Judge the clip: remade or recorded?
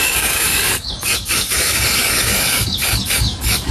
remade